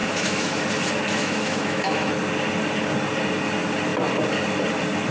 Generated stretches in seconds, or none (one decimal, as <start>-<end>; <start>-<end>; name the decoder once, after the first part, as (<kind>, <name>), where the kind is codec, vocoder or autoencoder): 0.0-0.6 (autoencoder, DAC-VAE); 1.1-2.1

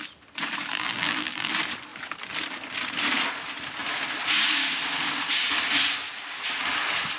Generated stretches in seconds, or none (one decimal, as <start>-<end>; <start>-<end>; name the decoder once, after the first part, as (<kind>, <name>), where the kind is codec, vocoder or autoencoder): 0.7-1.5 (vocoder, BigVGAN v2)

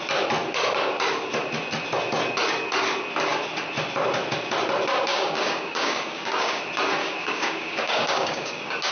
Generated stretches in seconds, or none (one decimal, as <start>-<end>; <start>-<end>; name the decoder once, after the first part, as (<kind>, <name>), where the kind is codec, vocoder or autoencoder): 5.1-6.6 (codec, DAC); 7.0-8.9

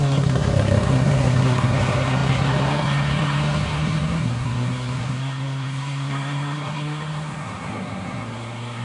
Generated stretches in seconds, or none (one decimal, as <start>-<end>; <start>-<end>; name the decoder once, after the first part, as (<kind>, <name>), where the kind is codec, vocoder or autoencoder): 0.0-8.8 (codec, SNAC)

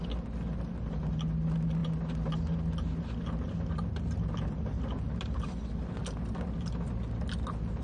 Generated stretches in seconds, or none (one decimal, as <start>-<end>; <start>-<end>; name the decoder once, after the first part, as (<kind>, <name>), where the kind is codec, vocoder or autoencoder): none

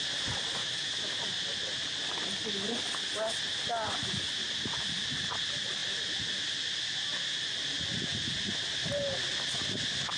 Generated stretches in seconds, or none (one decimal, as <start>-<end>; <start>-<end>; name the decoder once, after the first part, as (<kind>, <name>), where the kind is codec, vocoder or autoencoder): 0.6-1.2 (autoencoder, DAC-VAE)

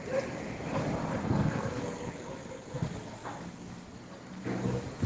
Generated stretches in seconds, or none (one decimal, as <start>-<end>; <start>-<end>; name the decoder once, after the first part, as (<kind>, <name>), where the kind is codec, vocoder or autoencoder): 1.2-2.1 (codec, SNAC)